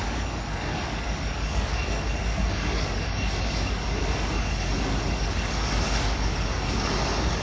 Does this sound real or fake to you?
fake